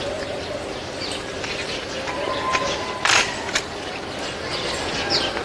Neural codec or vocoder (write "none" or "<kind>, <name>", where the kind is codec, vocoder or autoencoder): none